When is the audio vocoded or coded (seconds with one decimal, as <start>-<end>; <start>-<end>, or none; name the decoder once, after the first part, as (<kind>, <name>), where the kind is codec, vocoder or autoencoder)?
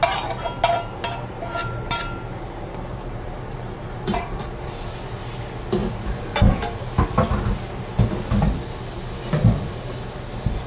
1.6-4.2 (vocoder, BigVGAN v2)